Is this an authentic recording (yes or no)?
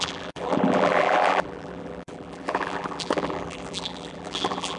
no